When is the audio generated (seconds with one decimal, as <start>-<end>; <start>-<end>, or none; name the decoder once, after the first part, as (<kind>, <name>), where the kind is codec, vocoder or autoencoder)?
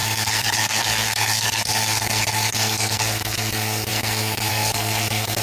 0.0-5.4 (codec, SNAC)